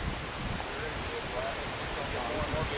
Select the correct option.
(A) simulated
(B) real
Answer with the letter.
B